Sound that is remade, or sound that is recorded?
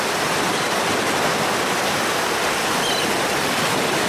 recorded